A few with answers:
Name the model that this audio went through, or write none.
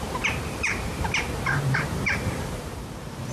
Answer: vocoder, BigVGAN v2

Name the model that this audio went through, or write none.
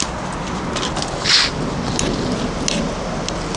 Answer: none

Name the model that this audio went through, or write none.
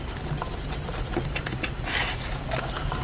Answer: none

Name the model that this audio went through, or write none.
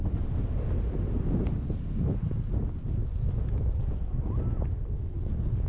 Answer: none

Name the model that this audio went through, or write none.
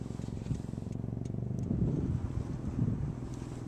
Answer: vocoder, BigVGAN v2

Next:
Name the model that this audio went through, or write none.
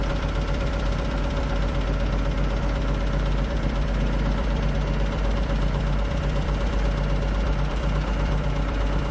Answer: vocoder, BigVGAN v2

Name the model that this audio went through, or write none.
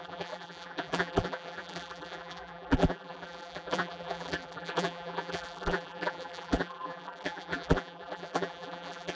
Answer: vocoder, BigVGAN v2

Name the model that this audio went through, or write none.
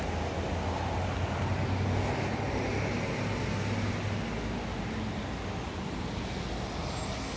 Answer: none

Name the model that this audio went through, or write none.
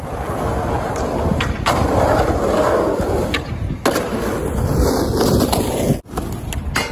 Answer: none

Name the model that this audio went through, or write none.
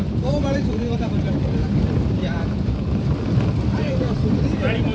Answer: vocoder, BigVGAN v2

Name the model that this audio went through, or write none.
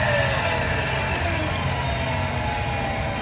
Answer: none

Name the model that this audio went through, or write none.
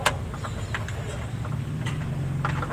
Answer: none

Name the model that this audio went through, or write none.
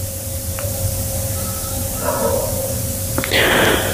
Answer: none